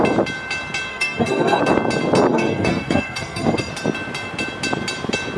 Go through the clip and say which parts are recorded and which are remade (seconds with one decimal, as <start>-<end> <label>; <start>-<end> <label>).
0.0-0.9 recorded; 0.9-1.6 remade; 1.6-2.3 recorded; 2.3-3.7 remade; 3.7-5.4 recorded